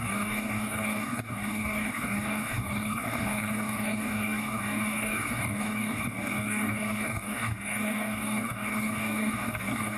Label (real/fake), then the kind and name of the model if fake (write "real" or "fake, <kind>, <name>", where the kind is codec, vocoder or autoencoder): fake, codec, DAC